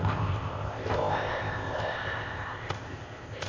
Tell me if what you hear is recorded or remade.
remade